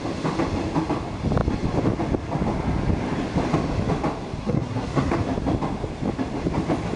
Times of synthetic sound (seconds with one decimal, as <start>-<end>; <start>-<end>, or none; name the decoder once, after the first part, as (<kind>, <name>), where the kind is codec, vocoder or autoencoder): 4.4-5.2 (codec, SNAC)